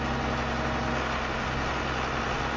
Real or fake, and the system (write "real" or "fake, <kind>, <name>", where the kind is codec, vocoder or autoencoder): real